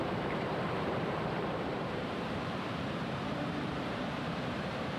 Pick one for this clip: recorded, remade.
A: remade